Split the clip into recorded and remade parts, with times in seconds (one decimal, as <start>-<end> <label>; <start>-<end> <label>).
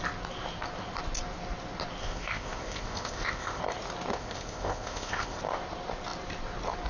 0.0-2.0 recorded; 2.0-3.6 remade; 3.6-4.1 recorded; 4.1-5.4 remade; 5.4-6.9 recorded